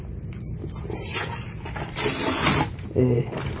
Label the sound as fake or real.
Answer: real